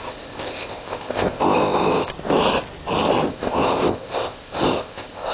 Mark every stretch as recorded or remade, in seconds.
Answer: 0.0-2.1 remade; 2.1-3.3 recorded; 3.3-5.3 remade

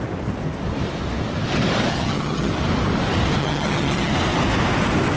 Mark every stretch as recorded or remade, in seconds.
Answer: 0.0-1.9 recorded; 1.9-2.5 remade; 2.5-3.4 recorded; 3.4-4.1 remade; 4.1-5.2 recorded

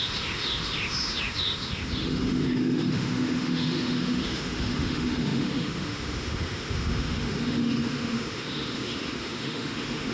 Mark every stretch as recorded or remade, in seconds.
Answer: 0.0-10.1 remade

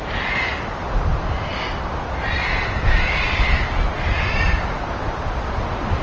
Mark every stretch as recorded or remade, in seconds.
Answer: 0.0-6.0 recorded

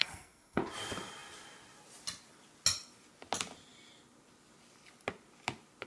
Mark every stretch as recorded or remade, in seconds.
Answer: 0.0-0.6 remade; 0.6-5.9 recorded